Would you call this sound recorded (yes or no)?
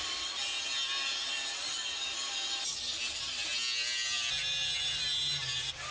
yes